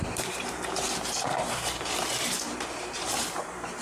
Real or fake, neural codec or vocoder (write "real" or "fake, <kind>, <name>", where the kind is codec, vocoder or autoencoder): fake, vocoder, BigVGAN v2